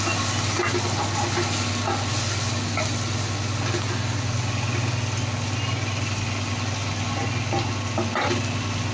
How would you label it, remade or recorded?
recorded